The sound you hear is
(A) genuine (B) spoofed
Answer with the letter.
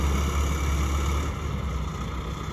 A